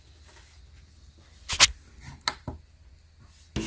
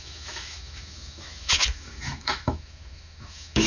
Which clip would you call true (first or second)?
first